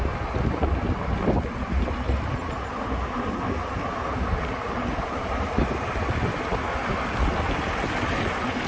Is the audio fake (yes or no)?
no